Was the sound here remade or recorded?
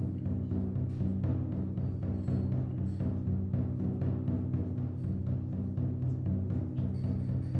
recorded